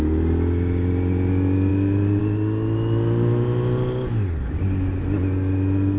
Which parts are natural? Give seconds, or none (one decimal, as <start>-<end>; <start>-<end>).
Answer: 0.0-6.0